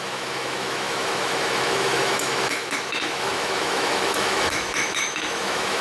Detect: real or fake fake